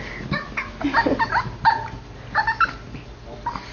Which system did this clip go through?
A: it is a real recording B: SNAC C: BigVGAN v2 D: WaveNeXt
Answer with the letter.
A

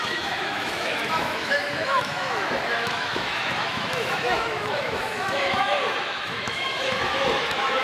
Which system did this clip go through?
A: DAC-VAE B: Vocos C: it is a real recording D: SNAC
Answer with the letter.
A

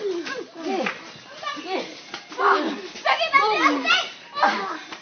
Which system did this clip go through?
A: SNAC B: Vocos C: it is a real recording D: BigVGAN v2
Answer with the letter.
D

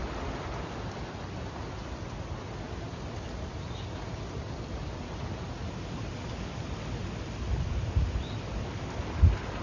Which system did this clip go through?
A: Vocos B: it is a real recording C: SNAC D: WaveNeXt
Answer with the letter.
B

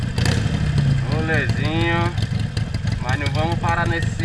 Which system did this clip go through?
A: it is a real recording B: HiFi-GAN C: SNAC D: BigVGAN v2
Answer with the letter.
A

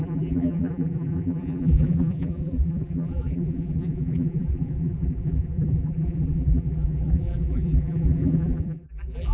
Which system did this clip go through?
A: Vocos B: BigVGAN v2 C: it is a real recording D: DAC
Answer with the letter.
B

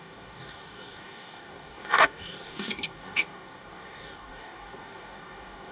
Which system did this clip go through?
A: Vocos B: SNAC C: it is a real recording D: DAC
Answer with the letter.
D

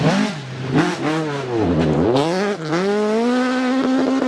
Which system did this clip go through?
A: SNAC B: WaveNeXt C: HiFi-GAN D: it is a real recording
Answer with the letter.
D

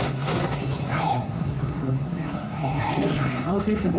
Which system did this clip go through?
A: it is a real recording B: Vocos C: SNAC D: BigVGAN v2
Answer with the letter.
C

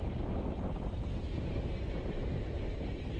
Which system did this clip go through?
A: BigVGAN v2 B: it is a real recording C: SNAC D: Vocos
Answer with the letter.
B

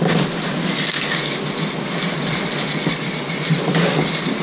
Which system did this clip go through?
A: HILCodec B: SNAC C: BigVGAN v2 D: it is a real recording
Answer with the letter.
D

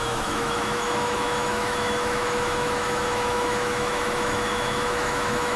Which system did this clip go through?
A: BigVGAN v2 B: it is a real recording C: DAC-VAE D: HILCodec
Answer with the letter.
C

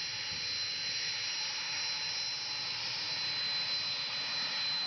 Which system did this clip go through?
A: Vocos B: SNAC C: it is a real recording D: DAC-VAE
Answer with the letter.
C